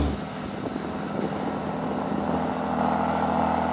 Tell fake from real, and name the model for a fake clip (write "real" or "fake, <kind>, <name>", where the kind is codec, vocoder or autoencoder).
real